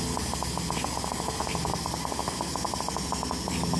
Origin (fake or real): real